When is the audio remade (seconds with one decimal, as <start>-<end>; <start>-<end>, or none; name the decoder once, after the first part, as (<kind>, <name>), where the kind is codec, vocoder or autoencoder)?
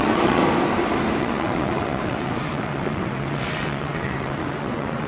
0.0-0.4 (vocoder, WaveNeXt); 1.2-5.1